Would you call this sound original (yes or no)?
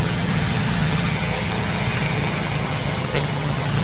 no